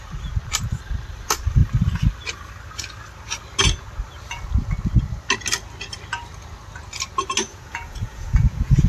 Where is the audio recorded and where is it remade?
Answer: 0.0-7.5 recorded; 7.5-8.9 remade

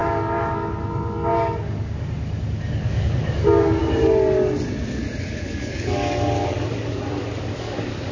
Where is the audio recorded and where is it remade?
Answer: 0.0-3.8 remade; 3.8-5.2 recorded; 5.2-8.1 remade

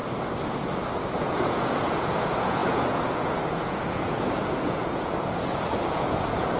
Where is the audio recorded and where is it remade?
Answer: 0.0-1.3 recorded; 1.3-6.6 remade

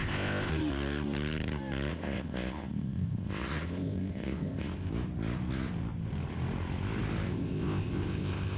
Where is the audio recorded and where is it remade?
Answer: 0.0-0.5 remade; 0.5-1.9 recorded; 1.9-4.9 remade; 4.9-7.3 recorded; 7.3-8.6 remade

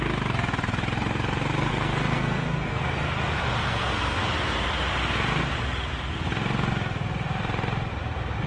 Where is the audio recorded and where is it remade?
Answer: 0.0-1.7 recorded; 1.7-2.8 remade; 2.8-3.6 recorded; 3.6-4.2 remade; 4.2-8.5 recorded

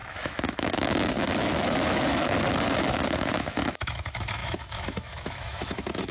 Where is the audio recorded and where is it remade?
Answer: 0.0-6.1 remade

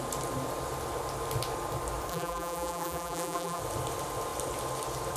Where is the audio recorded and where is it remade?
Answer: 0.0-2.1 recorded; 2.1-3.6 remade; 3.6-5.2 recorded